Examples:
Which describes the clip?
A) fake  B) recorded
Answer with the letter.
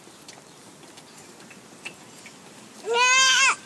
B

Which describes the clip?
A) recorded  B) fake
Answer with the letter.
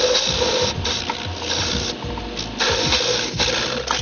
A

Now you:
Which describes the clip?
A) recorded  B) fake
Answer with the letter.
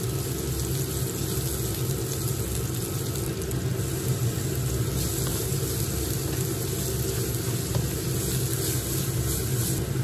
A